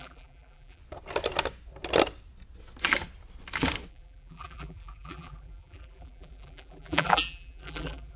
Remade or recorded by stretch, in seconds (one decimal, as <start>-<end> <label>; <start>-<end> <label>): 0.0-0.8 remade; 0.8-3.9 recorded; 3.9-8.2 remade